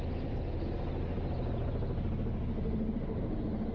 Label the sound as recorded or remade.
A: recorded